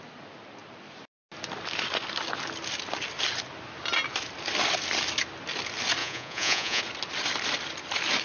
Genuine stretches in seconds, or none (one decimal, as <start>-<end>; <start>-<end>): 0.0-6.0; 6.8-8.2